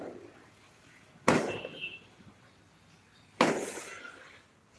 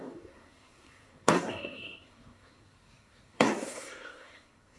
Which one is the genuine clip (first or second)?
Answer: first